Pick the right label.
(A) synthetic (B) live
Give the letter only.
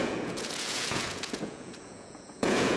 A